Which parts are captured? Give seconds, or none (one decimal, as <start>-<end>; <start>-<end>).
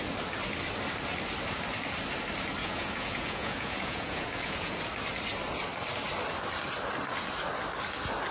0.0-2.6; 4.8-8.3